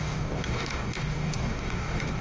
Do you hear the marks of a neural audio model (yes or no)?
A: yes